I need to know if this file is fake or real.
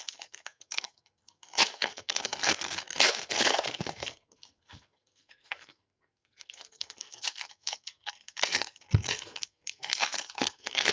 fake